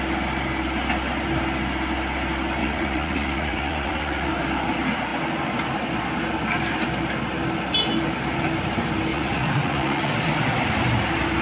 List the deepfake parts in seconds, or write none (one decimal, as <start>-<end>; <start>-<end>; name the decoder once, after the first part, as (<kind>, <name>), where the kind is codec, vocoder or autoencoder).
2.6-4.3 (vocoder, Vocos); 9.1-10.1